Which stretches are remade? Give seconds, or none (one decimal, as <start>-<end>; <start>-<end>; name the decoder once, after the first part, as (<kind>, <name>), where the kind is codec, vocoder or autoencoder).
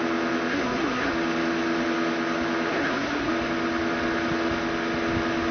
0.5-1.1 (codec, SNAC); 2.7-3.3